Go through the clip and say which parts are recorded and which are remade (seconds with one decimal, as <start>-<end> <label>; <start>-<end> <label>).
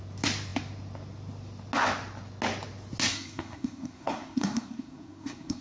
0.0-3.1 recorded; 3.1-5.6 remade